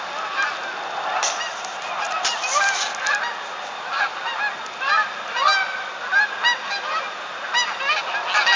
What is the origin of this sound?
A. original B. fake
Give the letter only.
A